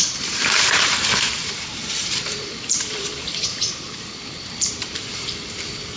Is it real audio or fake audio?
fake